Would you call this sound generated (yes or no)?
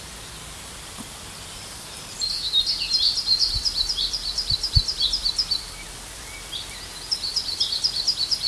yes